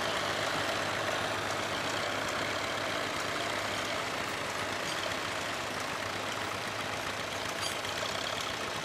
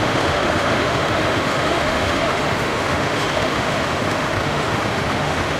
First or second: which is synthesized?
second